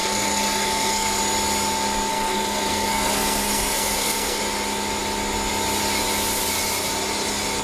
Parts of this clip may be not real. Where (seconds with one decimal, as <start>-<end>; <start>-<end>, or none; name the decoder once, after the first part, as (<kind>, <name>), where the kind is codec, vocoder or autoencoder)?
0.0-1.2 (codec, SNAC); 2.1-4.4